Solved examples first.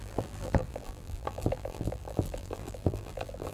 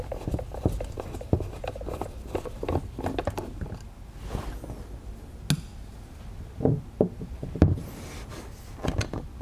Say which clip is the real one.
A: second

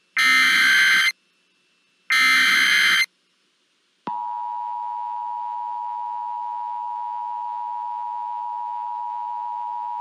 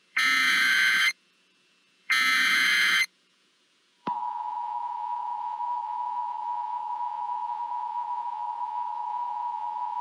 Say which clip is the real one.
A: first